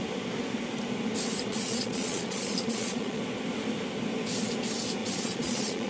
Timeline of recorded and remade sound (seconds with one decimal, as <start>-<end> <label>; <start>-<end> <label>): 0.0-1.5 recorded; 1.5-3.2 remade; 3.2-5.0 recorded; 5.0-5.9 remade